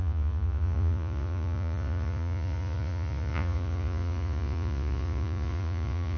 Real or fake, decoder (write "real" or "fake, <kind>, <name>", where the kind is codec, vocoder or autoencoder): fake, vocoder, Vocos